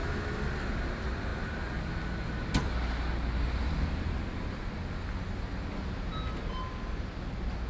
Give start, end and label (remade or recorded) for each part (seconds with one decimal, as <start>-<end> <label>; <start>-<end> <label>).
0.0-0.5 remade; 0.5-7.7 recorded